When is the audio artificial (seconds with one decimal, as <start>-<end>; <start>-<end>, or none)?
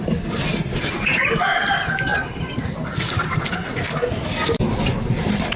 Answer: none